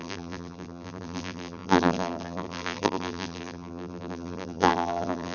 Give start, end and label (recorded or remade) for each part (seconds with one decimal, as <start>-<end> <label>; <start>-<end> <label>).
0.0-5.3 remade